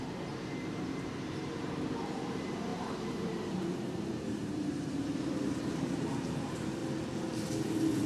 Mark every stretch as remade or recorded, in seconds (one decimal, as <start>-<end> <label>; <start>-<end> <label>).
0.0-6.8 remade; 6.8-8.1 recorded